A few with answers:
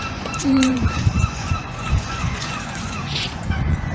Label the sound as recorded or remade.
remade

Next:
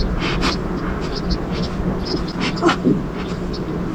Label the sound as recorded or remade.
recorded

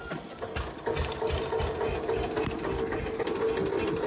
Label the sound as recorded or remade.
recorded